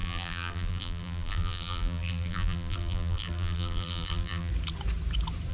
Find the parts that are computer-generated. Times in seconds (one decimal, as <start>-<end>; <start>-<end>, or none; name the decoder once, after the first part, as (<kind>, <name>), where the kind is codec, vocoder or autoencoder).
0.0-4.5 (vocoder, BigVGAN v2)